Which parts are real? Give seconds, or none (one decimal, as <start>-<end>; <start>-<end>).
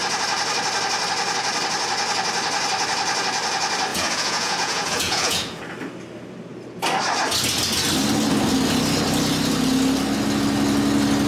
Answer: 0.0-3.9; 5.6-11.3